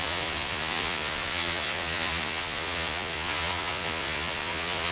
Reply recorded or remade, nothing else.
remade